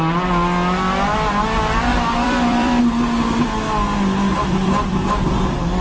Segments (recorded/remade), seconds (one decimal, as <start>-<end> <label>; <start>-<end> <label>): 0.0-1.9 recorded; 1.9-2.8 remade; 2.8-4.3 recorded; 4.3-5.3 remade; 5.3-5.8 recorded